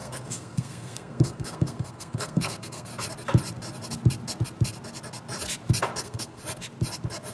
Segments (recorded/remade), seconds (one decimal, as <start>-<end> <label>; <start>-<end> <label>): 0.0-2.9 remade; 2.9-6.0 recorded; 6.0-6.4 remade; 6.4-7.3 recorded